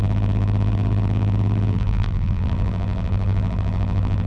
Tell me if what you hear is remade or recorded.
remade